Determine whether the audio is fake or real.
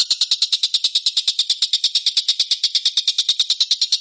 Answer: real